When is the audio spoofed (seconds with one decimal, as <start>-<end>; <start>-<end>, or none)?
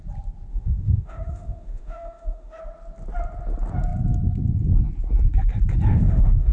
0.5-2.6; 5.9-6.5